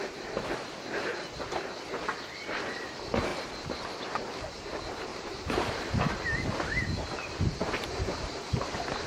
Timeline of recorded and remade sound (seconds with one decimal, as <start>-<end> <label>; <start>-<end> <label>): 0.0-3.3 recorded; 3.3-4.0 remade; 4.0-5.1 recorded; 5.1-6.1 remade; 6.1-7.6 recorded; 7.6-8.3 remade; 8.3-9.1 recorded